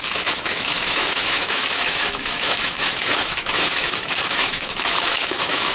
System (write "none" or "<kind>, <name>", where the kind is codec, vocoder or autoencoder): autoencoder, DAC-VAE